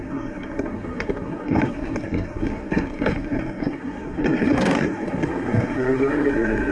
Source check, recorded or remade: remade